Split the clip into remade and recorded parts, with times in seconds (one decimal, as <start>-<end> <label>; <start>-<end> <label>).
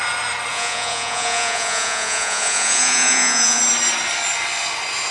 0.0-0.5 recorded; 0.5-3.6 remade; 3.6-5.1 recorded